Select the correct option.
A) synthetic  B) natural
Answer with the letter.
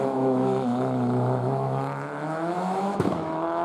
A